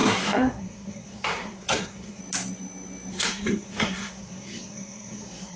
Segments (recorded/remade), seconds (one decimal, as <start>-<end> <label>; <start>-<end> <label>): 0.0-2.2 remade; 2.2-3.1 recorded; 3.1-5.6 remade